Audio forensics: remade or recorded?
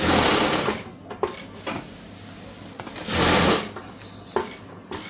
recorded